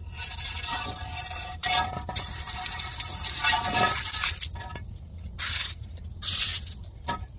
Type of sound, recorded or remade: recorded